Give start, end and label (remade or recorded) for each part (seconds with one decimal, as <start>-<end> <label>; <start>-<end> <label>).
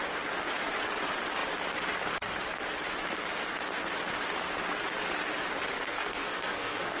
0.0-5.7 recorded; 5.7-7.0 remade